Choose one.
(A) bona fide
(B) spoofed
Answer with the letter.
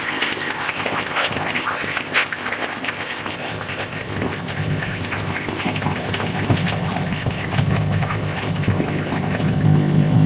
B